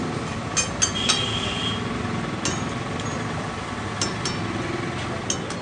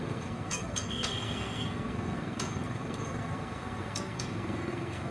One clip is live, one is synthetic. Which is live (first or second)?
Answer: first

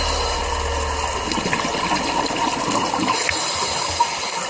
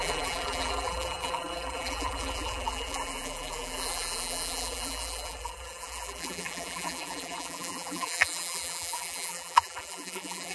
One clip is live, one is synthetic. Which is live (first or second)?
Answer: first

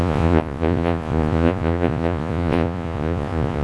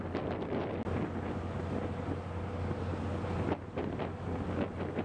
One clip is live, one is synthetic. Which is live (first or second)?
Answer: second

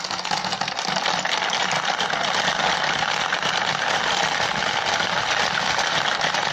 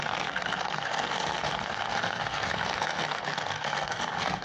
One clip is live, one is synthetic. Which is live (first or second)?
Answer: first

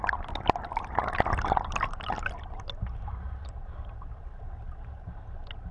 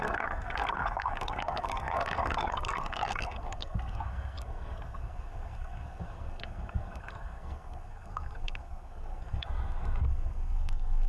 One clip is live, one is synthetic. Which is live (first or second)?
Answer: first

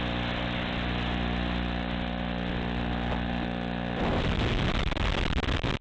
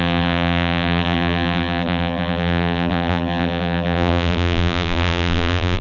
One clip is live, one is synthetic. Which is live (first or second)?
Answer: first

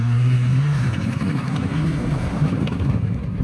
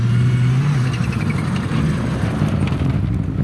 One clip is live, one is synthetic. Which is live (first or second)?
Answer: second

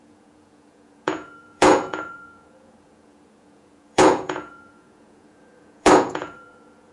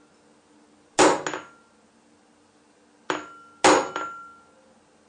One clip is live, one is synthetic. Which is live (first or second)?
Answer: second